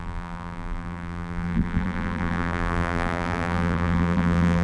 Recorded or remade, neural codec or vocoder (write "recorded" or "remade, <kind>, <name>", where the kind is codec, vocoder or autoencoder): remade, vocoder, BigVGAN v2